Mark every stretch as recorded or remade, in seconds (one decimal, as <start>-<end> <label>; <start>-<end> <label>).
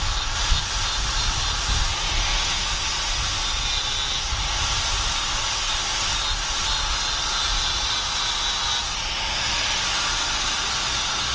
0.0-2.3 recorded; 2.3-2.8 remade; 2.8-11.3 recorded